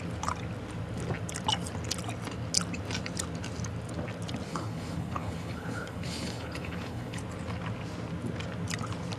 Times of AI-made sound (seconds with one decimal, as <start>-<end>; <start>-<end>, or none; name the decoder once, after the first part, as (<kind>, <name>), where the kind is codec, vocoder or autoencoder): 4.5-7.2 (codec, HILCodec)